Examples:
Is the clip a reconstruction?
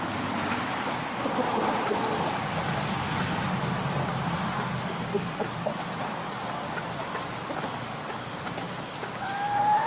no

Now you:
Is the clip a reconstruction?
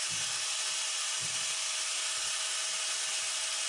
no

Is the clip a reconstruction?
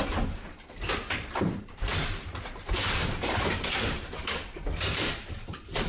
yes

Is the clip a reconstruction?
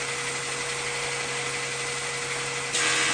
no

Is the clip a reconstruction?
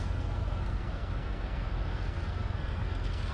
yes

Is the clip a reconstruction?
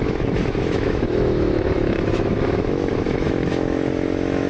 yes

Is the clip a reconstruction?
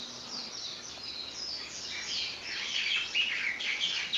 no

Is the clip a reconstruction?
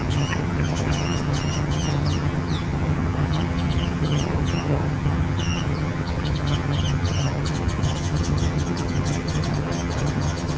yes